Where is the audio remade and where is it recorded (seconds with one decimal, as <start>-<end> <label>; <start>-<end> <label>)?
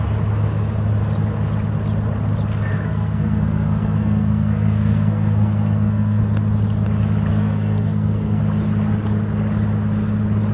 0.0-2.7 recorded; 2.7-6.2 remade; 6.2-7.3 recorded; 7.3-8.4 remade; 8.4-10.5 recorded